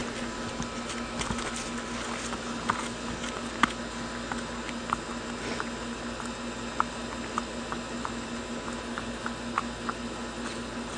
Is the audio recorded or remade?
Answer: recorded